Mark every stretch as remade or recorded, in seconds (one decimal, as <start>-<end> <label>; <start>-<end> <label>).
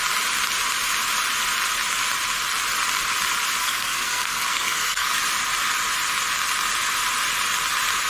0.0-3.6 recorded; 3.6-5.2 remade; 5.2-8.1 recorded